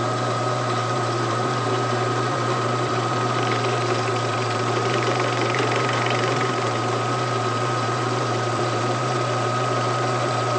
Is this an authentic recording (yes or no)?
no